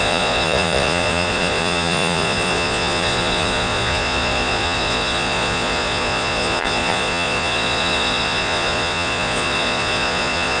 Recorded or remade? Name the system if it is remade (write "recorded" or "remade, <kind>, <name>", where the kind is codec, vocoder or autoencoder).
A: remade, vocoder, Vocos